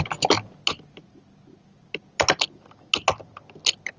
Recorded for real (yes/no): yes